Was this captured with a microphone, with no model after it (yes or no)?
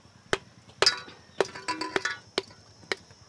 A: yes